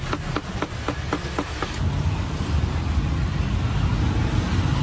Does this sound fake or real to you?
real